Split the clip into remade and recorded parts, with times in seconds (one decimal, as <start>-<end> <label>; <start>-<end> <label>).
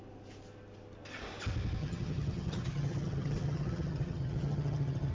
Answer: 0.0-1.8 recorded; 1.8-5.1 remade